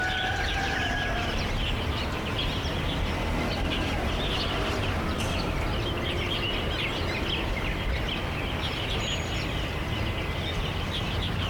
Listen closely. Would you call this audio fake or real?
real